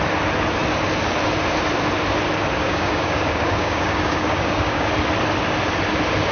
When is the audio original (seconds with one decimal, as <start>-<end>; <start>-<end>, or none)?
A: 0.0-2.6; 4.9-6.3

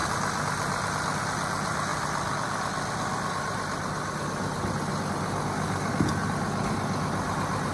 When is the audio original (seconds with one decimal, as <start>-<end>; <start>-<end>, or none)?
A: 0.0-7.7

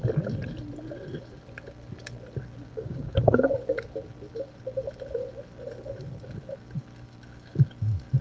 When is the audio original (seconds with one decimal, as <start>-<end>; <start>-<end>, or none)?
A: 0.0-2.7; 3.5-8.2

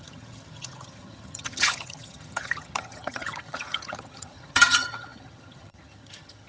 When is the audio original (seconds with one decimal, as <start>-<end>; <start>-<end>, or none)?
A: none

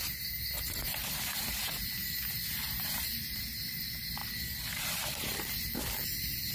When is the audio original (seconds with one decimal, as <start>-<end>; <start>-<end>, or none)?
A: 4.2-4.7

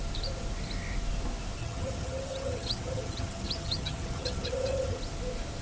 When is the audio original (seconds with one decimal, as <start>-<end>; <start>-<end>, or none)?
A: 0.0-1.6; 5.0-5.6

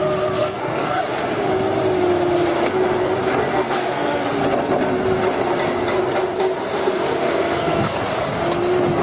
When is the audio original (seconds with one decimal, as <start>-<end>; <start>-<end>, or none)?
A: 0.0-0.4; 1.0-3.5; 4.3-6.8; 8.0-9.0